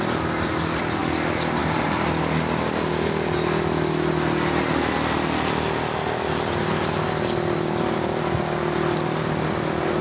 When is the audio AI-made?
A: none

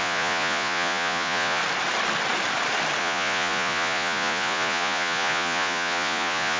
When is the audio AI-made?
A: 0.0-1.6 (vocoder, Vocos); 3.0-6.6

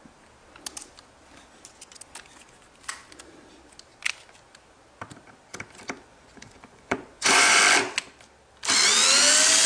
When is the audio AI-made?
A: 6.1-7.6 (vocoder, Vocos)